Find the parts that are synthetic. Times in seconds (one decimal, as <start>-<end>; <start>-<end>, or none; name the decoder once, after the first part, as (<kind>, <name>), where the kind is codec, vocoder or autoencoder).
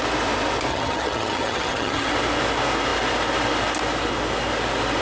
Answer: 0.7-2.1 (vocoder, HiFi-GAN)